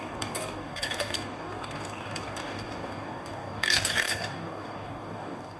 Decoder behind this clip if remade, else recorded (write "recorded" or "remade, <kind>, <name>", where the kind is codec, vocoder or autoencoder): remade, codec, DAC